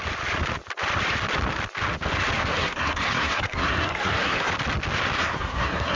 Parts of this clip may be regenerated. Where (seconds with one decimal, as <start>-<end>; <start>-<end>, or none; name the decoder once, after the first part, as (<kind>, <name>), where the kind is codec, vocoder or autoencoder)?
2.4-4.5 (codec, SNAC); 5.2-6.0